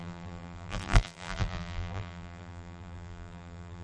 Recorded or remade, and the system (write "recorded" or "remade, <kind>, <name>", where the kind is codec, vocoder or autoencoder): remade, vocoder, BigVGAN v2